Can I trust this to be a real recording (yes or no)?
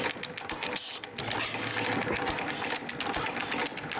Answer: yes